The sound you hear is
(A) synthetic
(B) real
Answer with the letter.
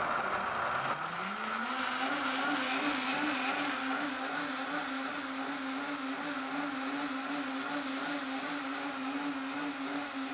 B